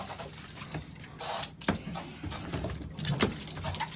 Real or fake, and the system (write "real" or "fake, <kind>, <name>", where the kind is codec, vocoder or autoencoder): real